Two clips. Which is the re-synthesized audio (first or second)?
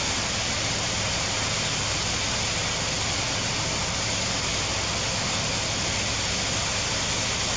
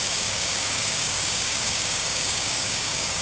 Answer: second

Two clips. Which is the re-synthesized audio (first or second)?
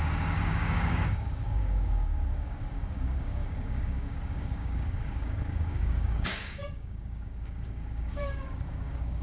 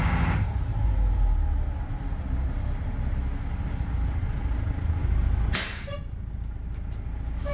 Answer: first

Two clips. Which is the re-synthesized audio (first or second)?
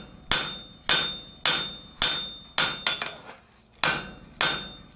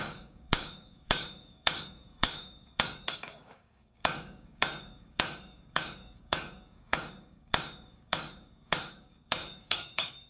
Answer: second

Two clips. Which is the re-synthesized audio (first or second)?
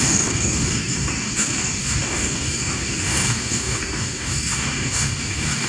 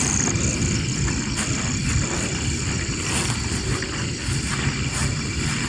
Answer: first